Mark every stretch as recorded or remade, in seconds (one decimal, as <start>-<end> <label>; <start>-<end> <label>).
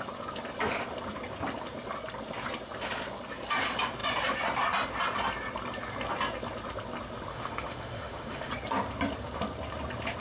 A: 0.0-7.3 recorded; 7.3-8.5 remade; 8.5-10.2 recorded